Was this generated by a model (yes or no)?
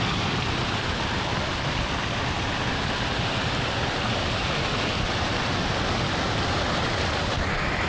no